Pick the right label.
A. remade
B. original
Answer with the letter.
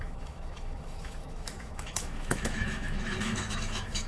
A